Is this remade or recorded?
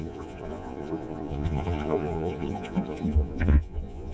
remade